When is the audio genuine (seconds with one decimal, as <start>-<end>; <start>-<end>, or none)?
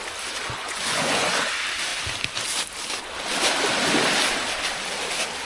0.0-0.6; 1.3-5.4